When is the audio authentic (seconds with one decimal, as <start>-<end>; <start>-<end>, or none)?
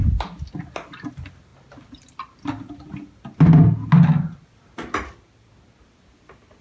0.0-6.6